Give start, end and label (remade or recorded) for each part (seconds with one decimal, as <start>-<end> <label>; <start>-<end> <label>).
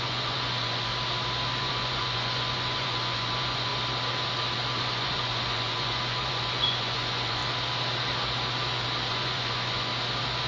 0.0-0.9 remade; 0.9-1.6 recorded; 1.6-3.7 remade; 3.7-4.8 recorded; 4.8-7.4 remade; 7.4-9.1 recorded; 9.1-9.9 remade; 9.9-10.5 recorded